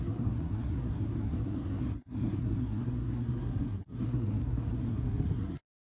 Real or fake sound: fake